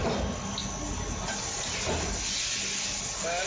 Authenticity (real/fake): real